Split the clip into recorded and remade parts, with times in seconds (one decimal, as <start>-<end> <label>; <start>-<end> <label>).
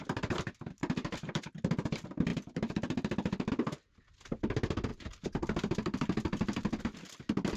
0.0-0.8 recorded; 0.8-1.5 remade; 1.5-2.3 recorded; 2.3-3.5 remade; 3.5-4.9 recorded; 4.9-6.8 remade; 6.8-7.6 recorded